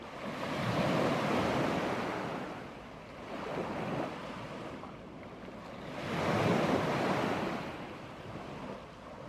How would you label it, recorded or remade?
recorded